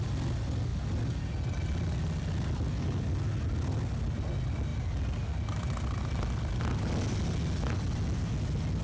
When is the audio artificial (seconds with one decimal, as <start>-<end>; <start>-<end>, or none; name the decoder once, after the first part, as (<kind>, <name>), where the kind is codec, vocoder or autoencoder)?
none